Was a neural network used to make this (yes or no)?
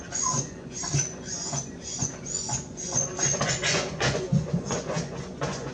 yes